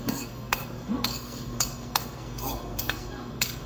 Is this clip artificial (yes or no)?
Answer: yes